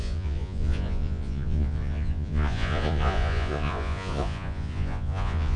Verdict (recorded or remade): remade